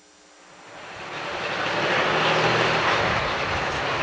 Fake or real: real